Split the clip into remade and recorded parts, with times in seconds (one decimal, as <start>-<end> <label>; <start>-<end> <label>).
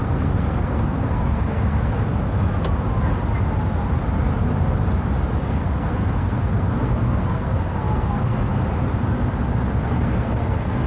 0.0-2.1 remade; 2.1-5.4 recorded; 5.4-8.5 remade; 8.5-9.8 recorded; 9.8-10.9 remade